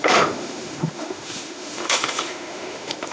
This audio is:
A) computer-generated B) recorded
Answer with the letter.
A